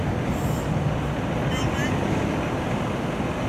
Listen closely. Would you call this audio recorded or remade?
recorded